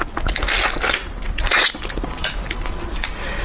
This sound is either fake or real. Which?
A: real